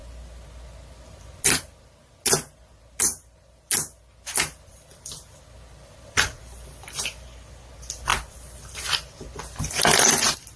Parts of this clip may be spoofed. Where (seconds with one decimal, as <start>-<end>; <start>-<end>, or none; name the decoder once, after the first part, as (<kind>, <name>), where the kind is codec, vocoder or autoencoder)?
4.7-7.7 (vocoder, BigVGAN v2); 8.1-8.8